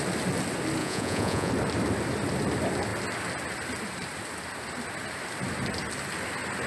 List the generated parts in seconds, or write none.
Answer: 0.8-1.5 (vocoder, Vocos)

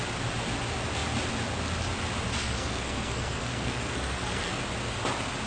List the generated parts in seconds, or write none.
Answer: 2.4-4.6 (codec, SNAC)

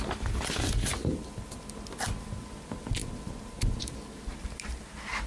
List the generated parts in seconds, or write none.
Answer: none